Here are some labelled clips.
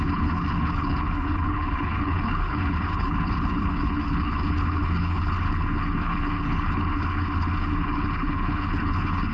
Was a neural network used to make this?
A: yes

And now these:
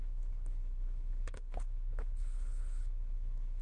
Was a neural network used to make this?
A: yes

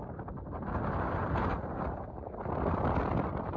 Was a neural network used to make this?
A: no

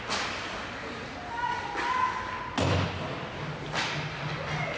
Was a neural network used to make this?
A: no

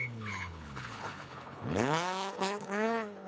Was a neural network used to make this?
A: yes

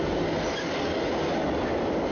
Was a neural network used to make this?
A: no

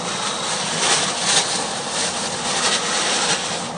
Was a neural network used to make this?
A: no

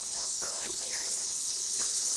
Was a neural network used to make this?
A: yes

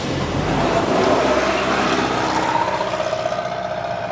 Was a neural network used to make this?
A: no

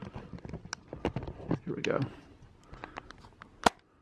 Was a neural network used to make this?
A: no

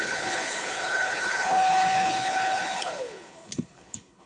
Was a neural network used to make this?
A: yes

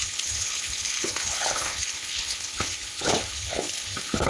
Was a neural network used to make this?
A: yes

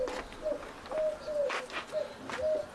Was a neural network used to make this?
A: no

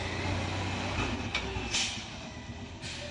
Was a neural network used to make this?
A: no